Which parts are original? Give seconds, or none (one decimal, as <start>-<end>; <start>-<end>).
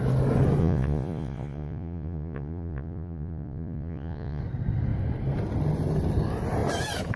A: 0.0-0.6; 4.4-7.2